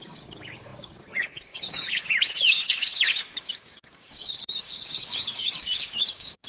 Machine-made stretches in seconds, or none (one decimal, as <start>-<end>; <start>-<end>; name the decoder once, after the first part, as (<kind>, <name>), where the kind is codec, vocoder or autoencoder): 0.0-6.5 (codec, DAC)